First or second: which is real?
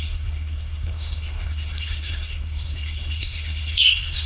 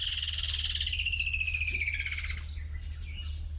second